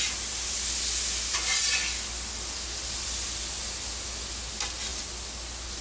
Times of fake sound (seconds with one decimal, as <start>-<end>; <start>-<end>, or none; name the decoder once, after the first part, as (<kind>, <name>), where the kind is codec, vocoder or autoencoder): none